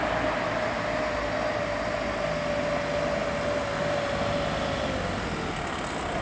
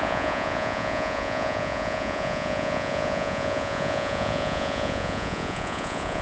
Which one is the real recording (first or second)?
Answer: first